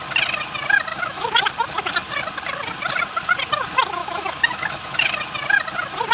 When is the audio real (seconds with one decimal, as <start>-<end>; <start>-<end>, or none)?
0.0-0.9; 1.4-4.0; 5.1-6.1